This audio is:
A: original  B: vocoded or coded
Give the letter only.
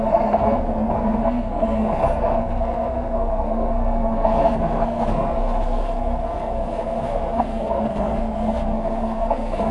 B